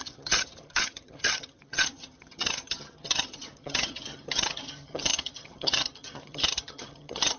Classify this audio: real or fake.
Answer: fake